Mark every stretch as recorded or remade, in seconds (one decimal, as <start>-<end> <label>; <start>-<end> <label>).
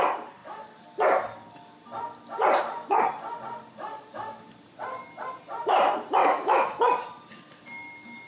0.0-6.2 recorded; 6.2-6.8 remade; 6.8-8.3 recorded